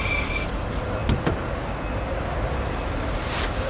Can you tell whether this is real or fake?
real